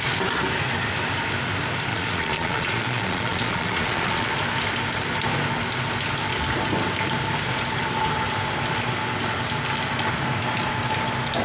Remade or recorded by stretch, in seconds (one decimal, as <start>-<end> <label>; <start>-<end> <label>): 0.0-1.9 recorded; 1.9-4.3 remade; 4.3-11.4 recorded